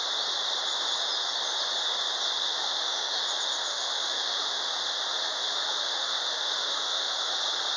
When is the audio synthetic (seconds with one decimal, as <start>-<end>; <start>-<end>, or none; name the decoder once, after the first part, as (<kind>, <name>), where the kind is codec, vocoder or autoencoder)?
2.4-3.2 (autoencoder, DAC-VAE); 3.7-4.6; 5.2-7.3